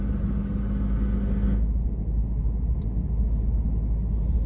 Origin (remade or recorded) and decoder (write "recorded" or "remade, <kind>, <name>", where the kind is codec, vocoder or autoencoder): recorded